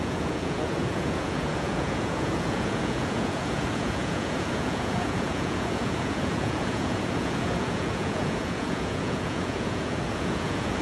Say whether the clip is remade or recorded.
remade